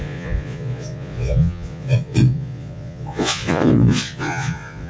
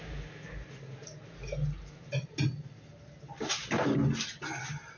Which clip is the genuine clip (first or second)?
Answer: second